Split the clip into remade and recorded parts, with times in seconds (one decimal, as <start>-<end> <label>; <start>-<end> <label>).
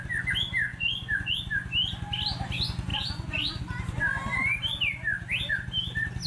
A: 0.0-0.7 recorded; 0.7-1.4 remade; 1.4-2.9 recorded; 2.9-3.6 remade; 3.6-6.3 recorded